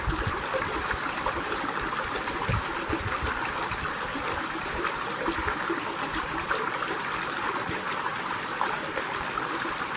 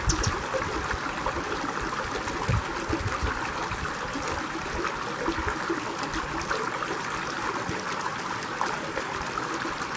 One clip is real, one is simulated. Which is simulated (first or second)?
first